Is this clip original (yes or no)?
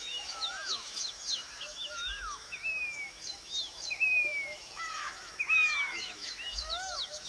no